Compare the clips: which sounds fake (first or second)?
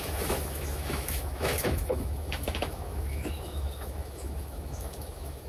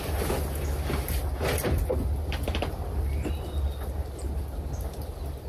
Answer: first